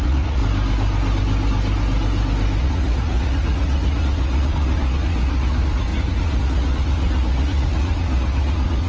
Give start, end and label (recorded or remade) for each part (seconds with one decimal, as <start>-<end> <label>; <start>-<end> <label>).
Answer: 0.0-0.4 remade; 0.4-2.6 recorded; 2.6-8.9 remade